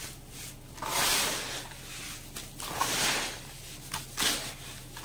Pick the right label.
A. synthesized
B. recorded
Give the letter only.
B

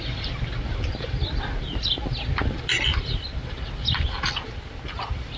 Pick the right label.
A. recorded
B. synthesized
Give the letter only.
A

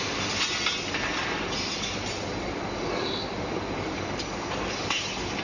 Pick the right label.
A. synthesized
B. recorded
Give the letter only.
A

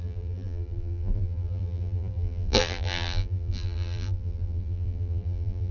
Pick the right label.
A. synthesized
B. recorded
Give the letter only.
A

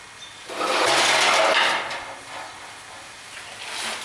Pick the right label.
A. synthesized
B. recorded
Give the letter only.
B